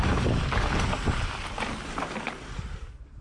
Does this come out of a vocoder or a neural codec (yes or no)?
no